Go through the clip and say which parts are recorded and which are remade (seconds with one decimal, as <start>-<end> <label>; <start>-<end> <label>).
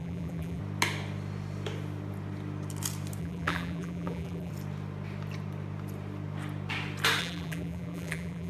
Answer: 0.0-0.6 remade; 0.6-3.2 recorded; 3.2-4.5 remade; 4.5-7.2 recorded; 7.2-8.5 remade